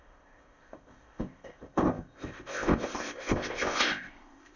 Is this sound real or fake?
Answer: fake